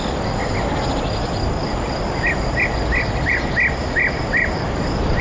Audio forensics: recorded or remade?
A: recorded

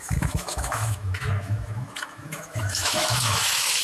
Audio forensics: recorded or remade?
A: remade